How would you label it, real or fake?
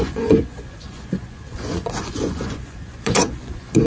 fake